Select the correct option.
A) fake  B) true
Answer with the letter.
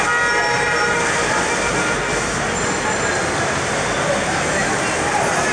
B